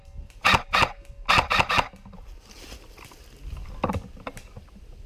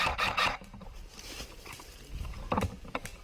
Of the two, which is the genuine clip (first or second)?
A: first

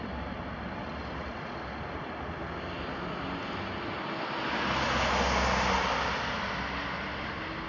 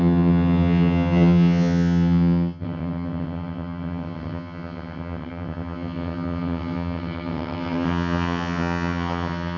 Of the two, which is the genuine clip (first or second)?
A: first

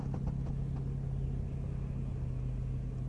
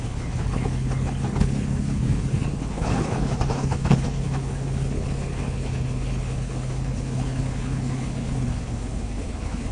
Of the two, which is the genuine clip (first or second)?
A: first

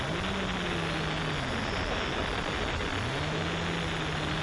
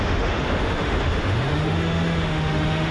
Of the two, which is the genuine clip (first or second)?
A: first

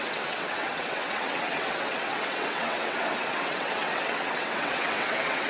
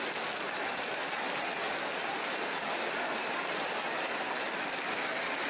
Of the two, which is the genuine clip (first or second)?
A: second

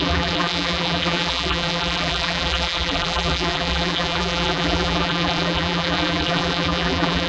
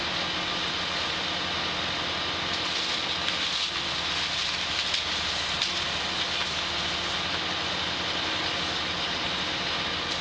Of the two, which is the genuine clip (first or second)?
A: second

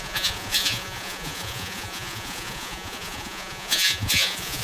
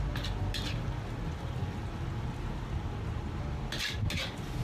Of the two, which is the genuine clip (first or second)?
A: second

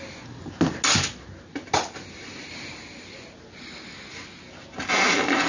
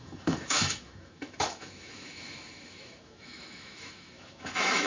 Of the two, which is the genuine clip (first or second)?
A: first